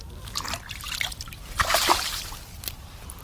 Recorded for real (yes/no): no